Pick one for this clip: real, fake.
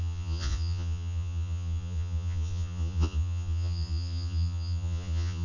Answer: fake